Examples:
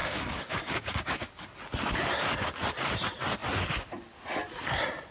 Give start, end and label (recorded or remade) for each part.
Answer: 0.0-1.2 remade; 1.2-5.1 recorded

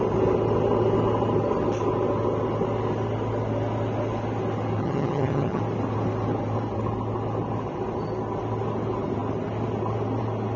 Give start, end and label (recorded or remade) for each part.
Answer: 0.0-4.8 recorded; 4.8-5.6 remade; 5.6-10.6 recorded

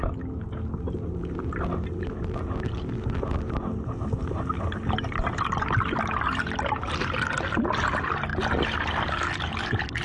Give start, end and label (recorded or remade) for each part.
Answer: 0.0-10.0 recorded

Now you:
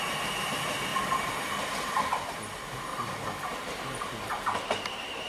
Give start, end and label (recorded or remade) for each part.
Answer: 0.0-2.9 recorded; 2.9-5.3 remade